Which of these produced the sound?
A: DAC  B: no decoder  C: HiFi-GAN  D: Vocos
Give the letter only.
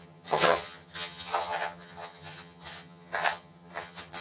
C